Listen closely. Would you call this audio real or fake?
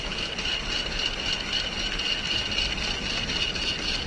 real